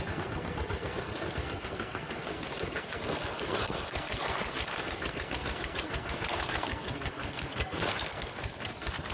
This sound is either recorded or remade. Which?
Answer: remade